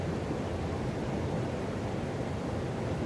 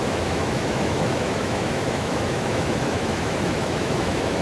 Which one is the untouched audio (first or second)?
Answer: first